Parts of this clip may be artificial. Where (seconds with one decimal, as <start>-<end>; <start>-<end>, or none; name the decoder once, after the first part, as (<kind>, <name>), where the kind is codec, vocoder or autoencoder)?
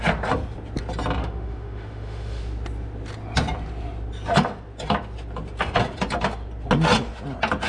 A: 1.2-2.4 (autoencoder, DAC-VAE)